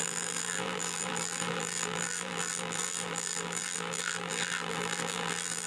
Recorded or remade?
remade